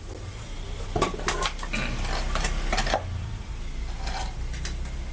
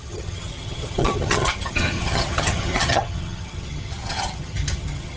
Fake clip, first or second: second